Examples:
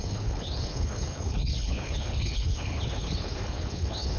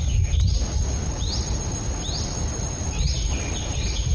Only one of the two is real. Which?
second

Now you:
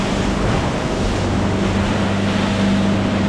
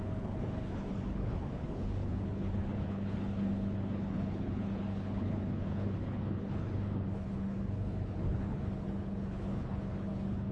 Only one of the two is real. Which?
first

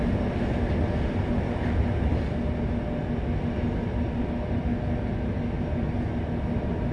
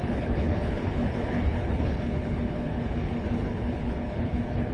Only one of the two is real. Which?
first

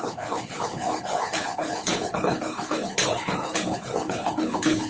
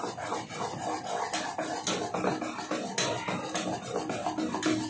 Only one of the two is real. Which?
second